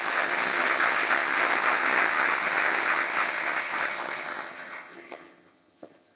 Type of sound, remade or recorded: remade